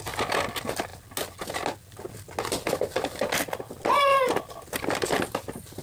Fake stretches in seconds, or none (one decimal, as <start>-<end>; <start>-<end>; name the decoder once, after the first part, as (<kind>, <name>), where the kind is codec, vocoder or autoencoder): none